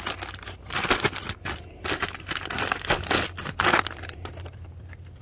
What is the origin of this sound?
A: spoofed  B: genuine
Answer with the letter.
A